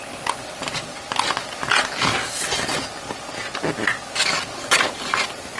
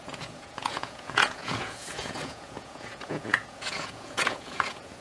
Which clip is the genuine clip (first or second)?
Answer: first